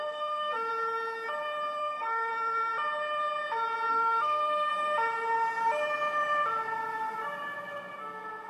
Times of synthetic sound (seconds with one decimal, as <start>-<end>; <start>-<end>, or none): 0.0-0.7; 1.8-2.3; 3.9-4.7; 8.0-8.5